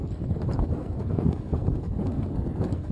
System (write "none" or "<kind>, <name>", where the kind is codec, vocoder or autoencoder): codec, SNAC